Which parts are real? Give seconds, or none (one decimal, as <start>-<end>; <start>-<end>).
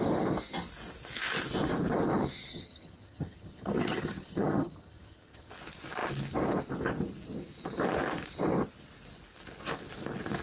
0.0-2.5; 5.5-10.4